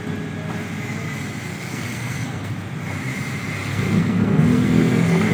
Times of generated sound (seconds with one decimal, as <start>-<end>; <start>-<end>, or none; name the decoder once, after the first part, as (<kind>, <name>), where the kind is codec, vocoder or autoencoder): 1.5-2.5 (codec, SNAC); 3.6-5.3